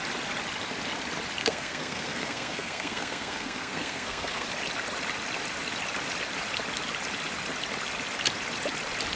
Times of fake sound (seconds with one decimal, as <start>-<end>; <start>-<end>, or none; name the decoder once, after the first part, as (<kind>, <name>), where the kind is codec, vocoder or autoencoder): 1.4-4.5 (codec, SNAC)